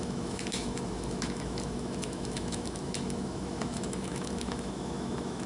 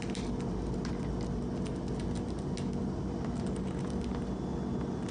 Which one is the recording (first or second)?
second